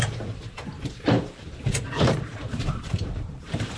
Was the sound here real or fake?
fake